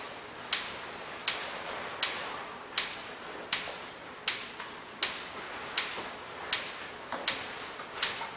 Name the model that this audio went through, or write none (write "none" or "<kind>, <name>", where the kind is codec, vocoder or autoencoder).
none